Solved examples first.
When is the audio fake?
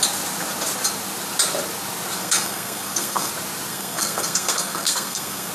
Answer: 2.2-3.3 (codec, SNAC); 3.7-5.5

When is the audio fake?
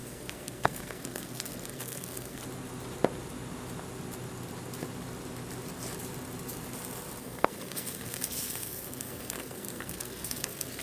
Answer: 0.0-2.4 (codec, SNAC); 7.2-10.8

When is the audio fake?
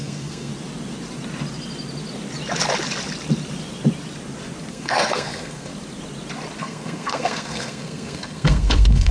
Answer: 0.0-0.5 (codec, SNAC); 4.7-5.7; 6.6-9.1